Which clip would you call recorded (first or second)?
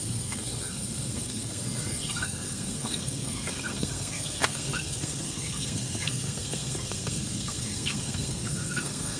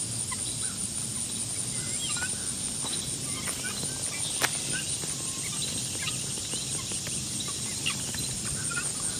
second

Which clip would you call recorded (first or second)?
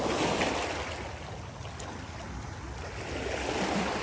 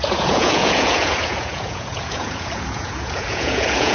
first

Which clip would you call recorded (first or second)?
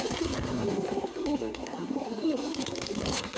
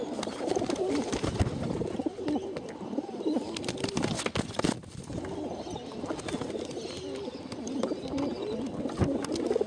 second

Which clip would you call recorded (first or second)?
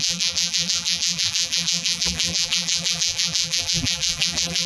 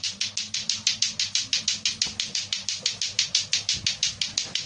second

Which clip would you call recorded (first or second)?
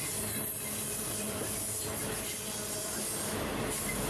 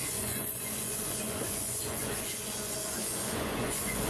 first